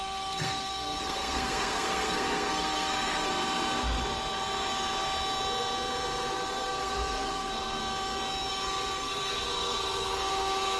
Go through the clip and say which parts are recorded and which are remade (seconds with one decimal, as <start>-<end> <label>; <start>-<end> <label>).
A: 0.0-3.3 remade; 3.3-6.3 recorded; 6.3-7.8 remade; 7.8-8.5 recorded; 8.5-10.8 remade

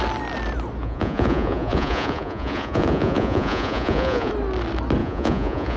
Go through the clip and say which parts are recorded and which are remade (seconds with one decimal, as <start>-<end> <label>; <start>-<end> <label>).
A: 0.0-0.8 recorded; 0.8-4.3 remade; 4.3-5.0 recorded; 5.0-5.8 remade

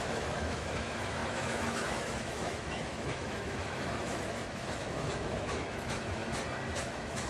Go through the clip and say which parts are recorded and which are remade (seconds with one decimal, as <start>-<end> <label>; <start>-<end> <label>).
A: 0.0-6.2 remade; 6.2-6.8 recorded; 6.8-7.3 remade

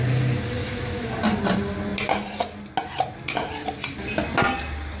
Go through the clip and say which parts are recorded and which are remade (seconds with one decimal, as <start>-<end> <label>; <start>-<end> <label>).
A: 0.0-0.6 recorded; 0.6-1.1 remade; 1.1-5.0 recorded

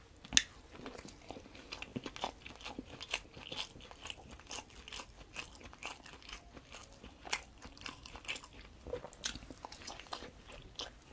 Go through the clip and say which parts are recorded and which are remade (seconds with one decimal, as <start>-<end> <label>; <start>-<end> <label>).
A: 0.0-6.8 recorded; 6.8-8.3 remade; 8.3-11.1 recorded